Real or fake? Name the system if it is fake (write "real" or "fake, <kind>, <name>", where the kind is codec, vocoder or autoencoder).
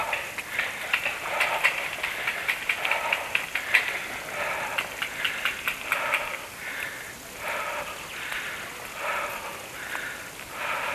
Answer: real